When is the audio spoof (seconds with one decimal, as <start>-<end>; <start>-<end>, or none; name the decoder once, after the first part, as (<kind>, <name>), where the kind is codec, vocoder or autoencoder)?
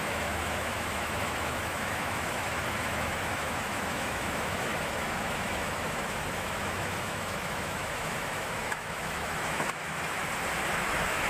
0.0-10.2 (autoencoder, DAC-VAE); 10.7-11.3